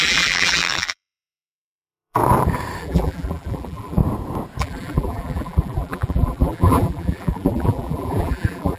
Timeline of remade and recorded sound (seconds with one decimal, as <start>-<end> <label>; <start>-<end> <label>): 0.0-2.2 remade; 2.2-2.8 recorded; 2.8-4.0 remade; 4.0-4.6 recorded; 4.6-8.8 remade